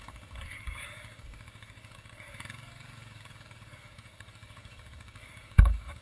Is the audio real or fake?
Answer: fake